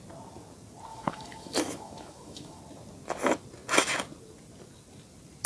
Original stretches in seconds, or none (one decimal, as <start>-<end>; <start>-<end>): 0.0-0.9; 2.6-5.5

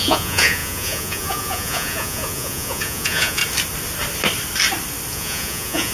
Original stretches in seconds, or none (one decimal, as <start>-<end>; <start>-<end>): 3.4-5.1

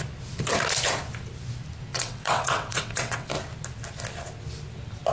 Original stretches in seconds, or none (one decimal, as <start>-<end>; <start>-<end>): 0.0-1.9; 3.3-5.1

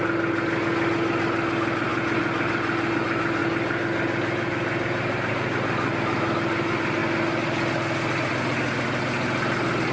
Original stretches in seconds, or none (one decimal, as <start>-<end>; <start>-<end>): 0.0-9.9

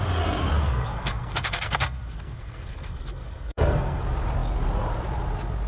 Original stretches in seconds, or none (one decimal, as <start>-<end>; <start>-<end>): 0.0-0.6; 4.0-5.7

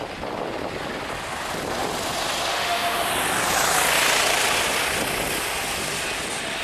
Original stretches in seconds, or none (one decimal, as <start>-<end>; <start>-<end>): 0.0-2.5; 3.1-6.6

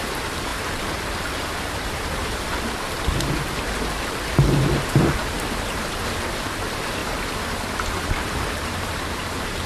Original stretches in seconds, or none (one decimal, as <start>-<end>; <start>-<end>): 7.0-8.0

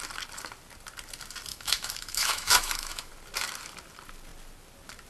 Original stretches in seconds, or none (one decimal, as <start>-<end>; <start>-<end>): 0.0-1.5; 3.1-5.1